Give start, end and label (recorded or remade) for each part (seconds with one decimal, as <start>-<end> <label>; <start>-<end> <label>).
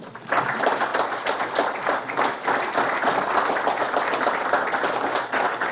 0.0-5.7 recorded